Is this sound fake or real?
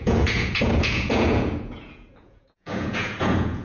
fake